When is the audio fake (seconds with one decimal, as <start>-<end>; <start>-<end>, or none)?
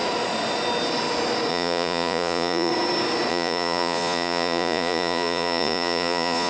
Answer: 1.5-2.7; 3.3-6.5